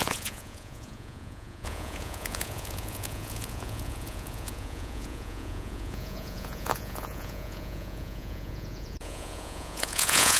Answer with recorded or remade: remade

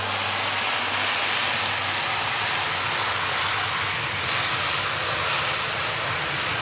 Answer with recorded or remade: recorded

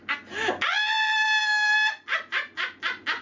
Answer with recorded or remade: recorded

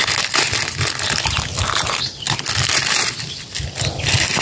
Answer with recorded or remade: recorded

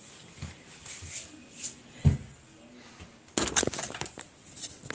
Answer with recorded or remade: recorded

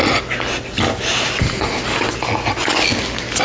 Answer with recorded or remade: recorded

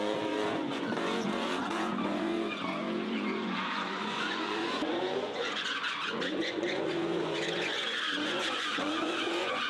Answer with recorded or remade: remade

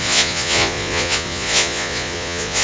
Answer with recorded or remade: remade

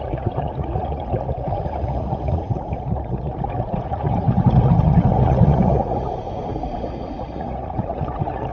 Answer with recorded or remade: remade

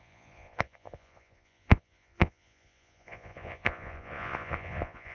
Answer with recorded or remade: remade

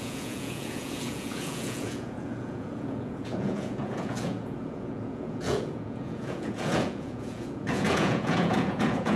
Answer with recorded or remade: remade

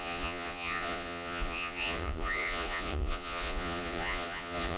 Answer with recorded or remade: remade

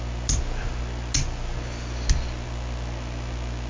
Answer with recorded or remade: recorded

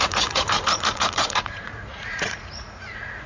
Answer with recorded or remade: remade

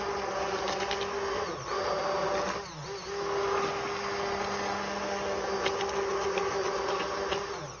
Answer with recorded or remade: recorded